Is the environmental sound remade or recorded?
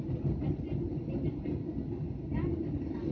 recorded